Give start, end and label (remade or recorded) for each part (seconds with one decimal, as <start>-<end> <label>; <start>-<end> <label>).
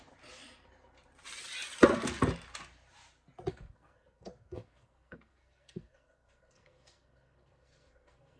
0.0-3.5 recorded; 3.5-8.4 remade